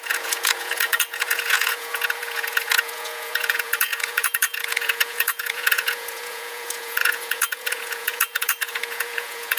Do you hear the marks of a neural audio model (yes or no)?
yes